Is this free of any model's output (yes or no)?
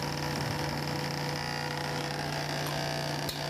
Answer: yes